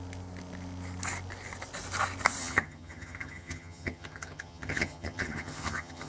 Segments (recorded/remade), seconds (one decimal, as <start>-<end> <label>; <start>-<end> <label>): 0.0-2.4 recorded; 2.4-6.1 remade